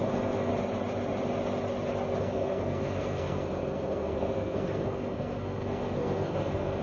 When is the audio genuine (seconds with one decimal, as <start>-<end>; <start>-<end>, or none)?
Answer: 0.5-2.2

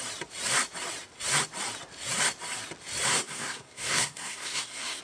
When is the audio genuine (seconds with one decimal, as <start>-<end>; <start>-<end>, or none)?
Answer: 0.0-3.1